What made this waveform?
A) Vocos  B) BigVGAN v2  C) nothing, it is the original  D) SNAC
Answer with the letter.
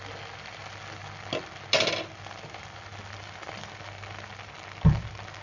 C